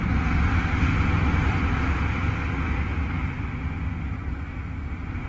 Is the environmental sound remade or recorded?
recorded